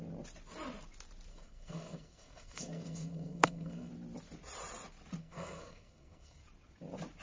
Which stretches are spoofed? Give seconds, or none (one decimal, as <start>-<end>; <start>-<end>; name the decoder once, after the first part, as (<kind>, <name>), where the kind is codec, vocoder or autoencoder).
1.3-3.9 (codec, SNAC); 5.2-6.4